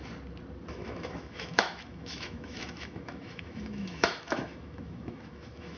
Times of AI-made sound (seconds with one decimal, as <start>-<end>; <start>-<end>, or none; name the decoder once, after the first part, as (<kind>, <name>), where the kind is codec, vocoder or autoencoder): 0.7-5.8 (autoencoder, DAC-VAE)